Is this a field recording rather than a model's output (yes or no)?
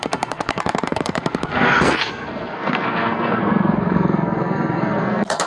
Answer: no